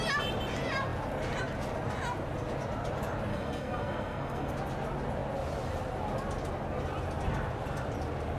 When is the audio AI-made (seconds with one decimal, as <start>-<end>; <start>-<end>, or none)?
3.3-4.5